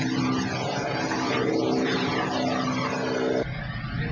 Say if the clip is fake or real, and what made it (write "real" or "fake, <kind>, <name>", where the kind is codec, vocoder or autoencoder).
real